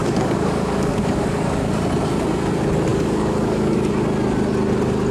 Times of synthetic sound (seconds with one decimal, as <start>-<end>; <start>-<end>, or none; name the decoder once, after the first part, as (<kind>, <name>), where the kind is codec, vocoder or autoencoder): 0.0-1.7 (codec, DAC); 2.9-3.9

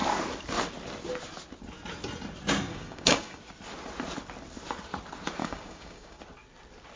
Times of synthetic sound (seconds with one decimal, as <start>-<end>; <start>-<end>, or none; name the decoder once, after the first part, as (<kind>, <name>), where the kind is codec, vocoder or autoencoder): 2.7-3.4 (codec, DAC); 5.4-6.2

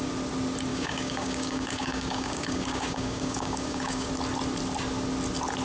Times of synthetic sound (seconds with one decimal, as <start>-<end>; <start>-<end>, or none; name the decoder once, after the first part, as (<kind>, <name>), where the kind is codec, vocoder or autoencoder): 0.7-4.1 (codec, DAC)

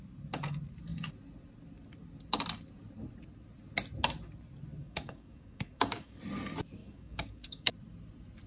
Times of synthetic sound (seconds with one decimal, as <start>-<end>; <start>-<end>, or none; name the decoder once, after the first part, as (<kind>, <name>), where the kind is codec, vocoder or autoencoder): 4.8-6.2 (codec, DAC); 6.8-7.7